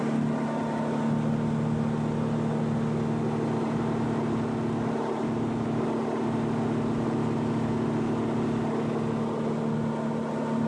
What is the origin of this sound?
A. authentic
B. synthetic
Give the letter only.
A